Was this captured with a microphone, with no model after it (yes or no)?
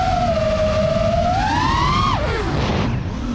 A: yes